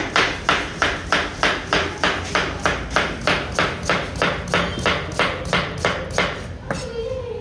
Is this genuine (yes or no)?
yes